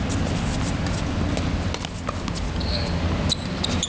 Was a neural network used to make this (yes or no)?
no